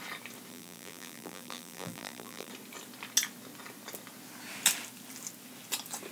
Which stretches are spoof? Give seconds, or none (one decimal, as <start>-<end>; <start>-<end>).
0.5-2.5